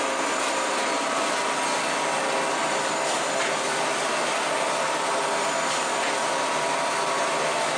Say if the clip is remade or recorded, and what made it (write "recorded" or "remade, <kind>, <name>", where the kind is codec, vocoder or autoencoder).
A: recorded